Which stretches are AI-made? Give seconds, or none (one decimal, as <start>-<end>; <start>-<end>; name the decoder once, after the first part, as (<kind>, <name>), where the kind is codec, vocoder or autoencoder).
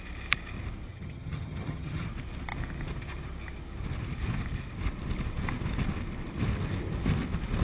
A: 0.9-2.1 (vocoder, HiFi-GAN)